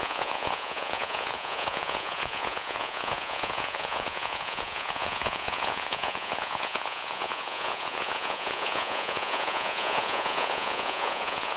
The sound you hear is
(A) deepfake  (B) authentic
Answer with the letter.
A